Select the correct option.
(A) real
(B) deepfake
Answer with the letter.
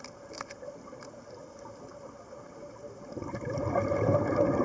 A